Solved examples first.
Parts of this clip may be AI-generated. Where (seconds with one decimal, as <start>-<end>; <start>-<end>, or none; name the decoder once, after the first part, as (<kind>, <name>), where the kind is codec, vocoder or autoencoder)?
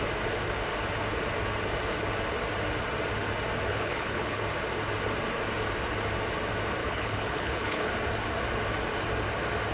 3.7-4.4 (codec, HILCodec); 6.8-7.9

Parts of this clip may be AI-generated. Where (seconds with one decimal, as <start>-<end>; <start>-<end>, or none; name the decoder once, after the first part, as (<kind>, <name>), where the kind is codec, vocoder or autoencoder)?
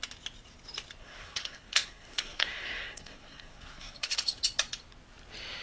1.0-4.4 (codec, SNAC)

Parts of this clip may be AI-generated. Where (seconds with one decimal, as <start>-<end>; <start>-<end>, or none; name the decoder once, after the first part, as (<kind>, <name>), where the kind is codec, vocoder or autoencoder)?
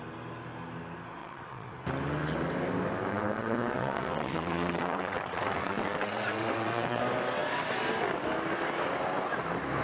1.2-1.7 (vocoder, WaveNeXt); 3.1-7.0